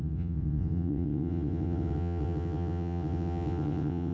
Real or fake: fake